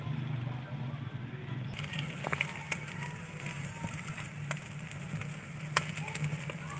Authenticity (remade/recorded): recorded